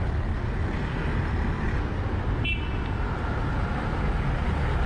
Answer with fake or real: real